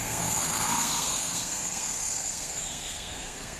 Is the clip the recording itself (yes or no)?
no